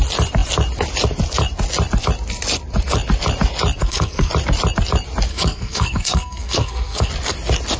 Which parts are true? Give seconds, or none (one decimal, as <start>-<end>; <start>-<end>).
0.0-3.8; 4.3-5.3; 7.1-7.8